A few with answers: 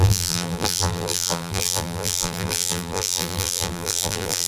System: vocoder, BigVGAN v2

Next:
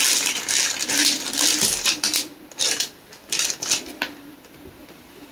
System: none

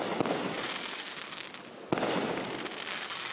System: none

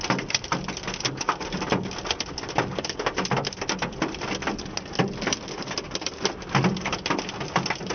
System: none